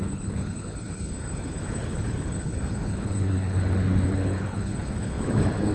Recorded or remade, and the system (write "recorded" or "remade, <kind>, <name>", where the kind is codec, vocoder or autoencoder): remade, codec, HILCodec